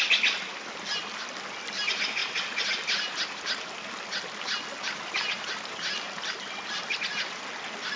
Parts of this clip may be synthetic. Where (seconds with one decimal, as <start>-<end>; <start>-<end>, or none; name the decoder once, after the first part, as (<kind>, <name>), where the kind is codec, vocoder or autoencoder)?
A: none